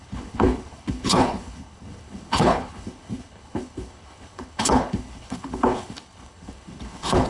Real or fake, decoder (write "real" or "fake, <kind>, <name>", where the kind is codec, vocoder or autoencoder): fake, codec, HILCodec